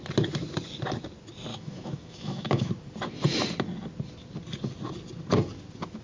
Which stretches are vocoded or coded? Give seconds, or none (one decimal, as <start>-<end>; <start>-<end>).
1.5-2.7